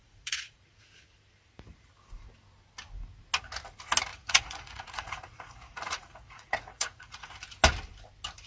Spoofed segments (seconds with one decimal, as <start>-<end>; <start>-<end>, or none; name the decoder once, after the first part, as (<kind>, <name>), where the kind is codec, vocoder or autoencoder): 0.0-0.7 (vocoder, Vocos); 4.1-7.3

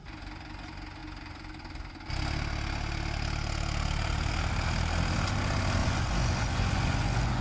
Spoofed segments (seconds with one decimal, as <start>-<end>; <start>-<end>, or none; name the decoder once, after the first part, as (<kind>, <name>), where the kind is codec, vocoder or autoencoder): 5.8-7.4 (vocoder, Vocos)

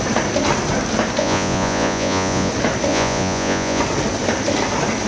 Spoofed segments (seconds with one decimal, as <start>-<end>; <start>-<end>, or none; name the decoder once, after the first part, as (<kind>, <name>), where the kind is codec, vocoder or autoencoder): 1.2-2.5 (vocoder, Vocos); 2.9-3.8

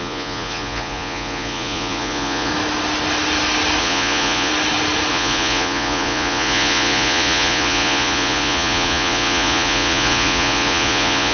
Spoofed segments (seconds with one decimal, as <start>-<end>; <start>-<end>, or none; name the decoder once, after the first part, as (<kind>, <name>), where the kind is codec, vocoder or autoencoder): 0.0-2.5 (vocoder, Vocos); 3.8-4.5; 5.1-11.3

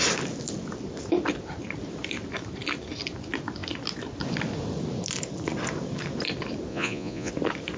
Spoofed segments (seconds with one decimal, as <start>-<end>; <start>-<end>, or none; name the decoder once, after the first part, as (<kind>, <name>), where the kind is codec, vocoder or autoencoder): 6.7-7.3 (vocoder, Vocos)

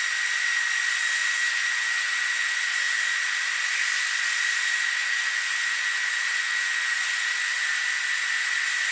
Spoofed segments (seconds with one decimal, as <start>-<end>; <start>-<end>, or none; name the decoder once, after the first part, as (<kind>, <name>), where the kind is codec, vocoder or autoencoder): 1.2-2.6 (vocoder, Vocos); 5.0-7.3

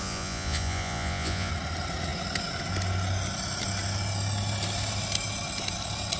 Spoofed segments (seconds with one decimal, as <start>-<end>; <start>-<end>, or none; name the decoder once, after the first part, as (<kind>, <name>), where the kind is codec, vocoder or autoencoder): 0.0-1.5 (vocoder, Vocos)

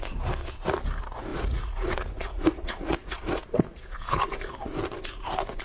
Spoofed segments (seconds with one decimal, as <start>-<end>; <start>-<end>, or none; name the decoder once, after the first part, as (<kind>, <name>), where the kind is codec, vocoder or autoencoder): 1.3-4.5 (vocoder, Vocos)